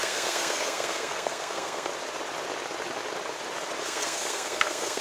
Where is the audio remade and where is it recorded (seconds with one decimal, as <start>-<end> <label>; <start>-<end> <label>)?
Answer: 0.0-1.9 remade; 1.9-3.8 recorded; 3.8-5.0 remade